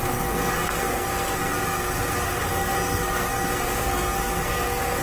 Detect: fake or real fake